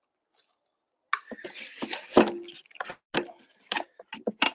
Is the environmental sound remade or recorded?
recorded